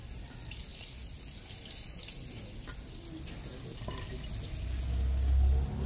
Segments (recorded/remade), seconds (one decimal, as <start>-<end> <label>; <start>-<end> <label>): 0.0-5.9 recorded